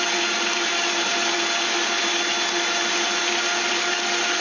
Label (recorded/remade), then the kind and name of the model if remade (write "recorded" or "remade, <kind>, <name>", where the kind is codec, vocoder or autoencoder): recorded